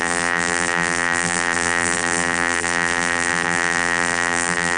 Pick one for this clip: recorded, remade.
remade